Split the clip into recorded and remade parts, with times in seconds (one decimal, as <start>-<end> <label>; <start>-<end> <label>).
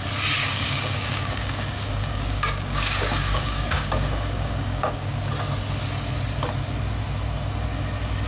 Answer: 0.0-0.4 recorded; 0.4-5.3 remade; 5.3-8.3 recorded